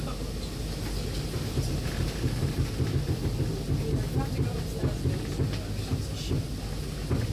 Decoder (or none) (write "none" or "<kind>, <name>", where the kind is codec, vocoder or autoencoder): none